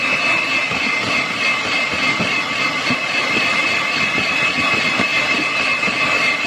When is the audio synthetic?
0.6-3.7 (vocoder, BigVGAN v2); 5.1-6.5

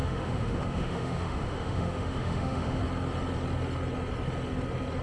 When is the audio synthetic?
0.0-2.8 (autoencoder, DAC-VAE)

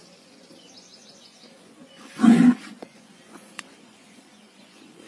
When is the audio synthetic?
0.0-5.1 (vocoder, Vocos)

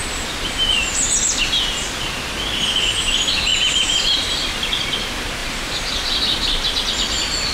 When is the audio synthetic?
0.0-1.1 (vocoder, BigVGAN v2); 3.5-4.4; 5.4-6.2

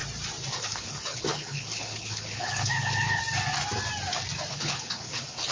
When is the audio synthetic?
0.5-3.2 (codec, HILCodec); 4.5-5.5

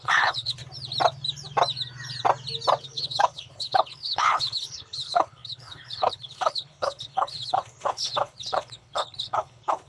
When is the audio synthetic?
0.0-0.6 (codec, HILCodec); 2.8-9.9